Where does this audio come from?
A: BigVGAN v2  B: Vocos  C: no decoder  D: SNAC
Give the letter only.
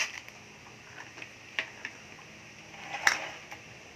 C